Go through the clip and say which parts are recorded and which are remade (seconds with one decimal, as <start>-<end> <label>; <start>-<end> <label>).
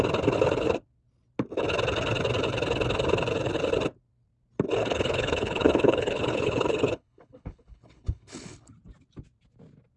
0.0-4.8 recorded; 4.8-8.7 remade; 8.7-10.0 recorded